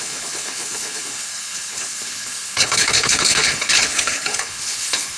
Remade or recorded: remade